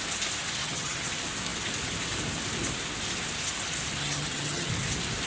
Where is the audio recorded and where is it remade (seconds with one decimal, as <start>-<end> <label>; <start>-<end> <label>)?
0.0-0.6 recorded; 0.6-1.1 remade; 1.1-4.0 recorded; 4.0-4.7 remade; 4.7-5.3 recorded